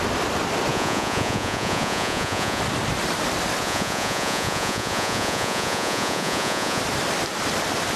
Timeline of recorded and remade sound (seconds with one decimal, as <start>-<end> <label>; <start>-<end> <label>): 0.0-0.7 recorded; 0.7-2.6 remade; 2.6-3.6 recorded; 3.6-6.8 remade; 6.8-8.0 recorded